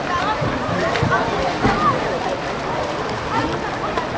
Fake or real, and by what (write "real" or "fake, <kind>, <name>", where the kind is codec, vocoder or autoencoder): real